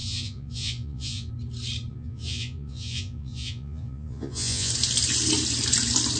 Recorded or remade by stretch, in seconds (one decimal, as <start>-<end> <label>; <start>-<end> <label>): 0.0-1.3 remade; 1.3-1.9 recorded; 1.9-4.7 remade; 4.7-6.2 recorded